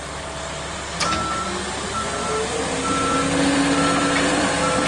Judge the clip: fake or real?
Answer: real